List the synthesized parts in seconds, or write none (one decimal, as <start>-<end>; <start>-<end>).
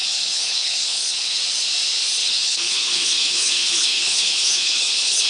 0.0-1.4; 2.2-5.3